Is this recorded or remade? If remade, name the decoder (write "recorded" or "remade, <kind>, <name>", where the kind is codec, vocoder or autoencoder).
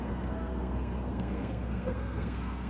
remade, codec, SNAC